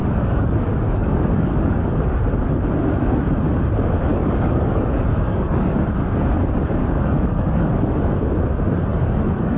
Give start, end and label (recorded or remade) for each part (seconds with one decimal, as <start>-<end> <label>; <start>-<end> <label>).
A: 0.0-2.0 remade; 2.0-4.1 recorded; 4.1-5.8 remade; 5.8-6.8 recorded; 6.8-8.1 remade; 8.1-8.9 recorded; 8.9-9.6 remade